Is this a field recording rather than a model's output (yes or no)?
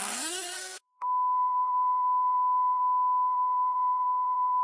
no